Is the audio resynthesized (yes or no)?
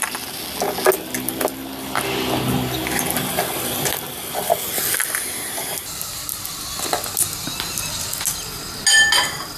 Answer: no